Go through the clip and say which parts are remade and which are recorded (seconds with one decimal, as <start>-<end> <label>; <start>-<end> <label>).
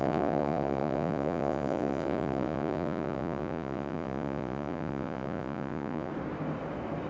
0.0-6.1 remade; 6.1-7.1 recorded